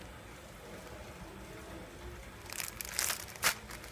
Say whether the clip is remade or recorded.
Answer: recorded